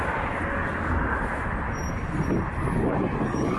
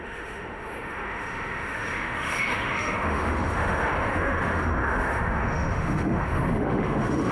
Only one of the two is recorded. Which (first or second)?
first